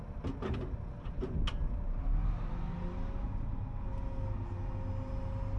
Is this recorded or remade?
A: recorded